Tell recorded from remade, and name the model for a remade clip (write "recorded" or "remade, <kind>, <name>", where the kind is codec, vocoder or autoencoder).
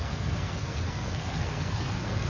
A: remade, codec, SNAC